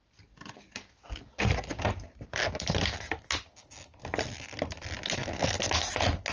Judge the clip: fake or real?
real